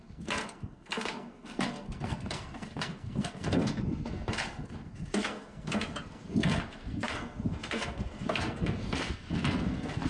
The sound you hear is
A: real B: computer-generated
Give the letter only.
B